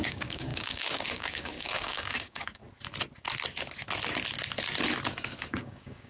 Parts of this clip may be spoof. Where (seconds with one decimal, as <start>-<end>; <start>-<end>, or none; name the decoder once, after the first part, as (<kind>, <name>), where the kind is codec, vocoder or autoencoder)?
0.0-2.6 (codec, DAC); 5.5-6.1